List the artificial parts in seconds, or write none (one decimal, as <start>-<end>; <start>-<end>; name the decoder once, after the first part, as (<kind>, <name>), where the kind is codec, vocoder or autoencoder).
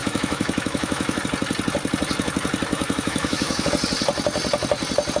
0.0-1.2 (autoencoder, DAC-VAE); 2.7-3.7